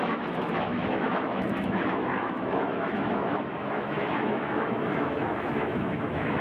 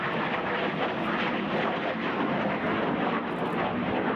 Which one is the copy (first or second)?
first